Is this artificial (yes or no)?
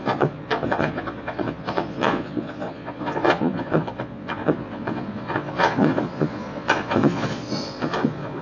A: yes